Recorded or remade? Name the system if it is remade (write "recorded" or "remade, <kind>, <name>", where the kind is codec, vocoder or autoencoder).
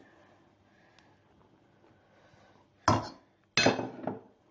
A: recorded